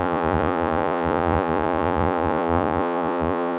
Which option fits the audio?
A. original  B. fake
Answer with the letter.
B